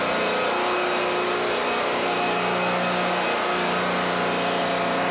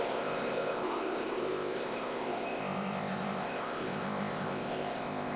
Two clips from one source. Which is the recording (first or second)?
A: first